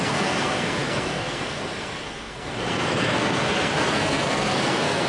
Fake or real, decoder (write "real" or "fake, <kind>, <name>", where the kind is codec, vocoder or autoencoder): fake, codec, SNAC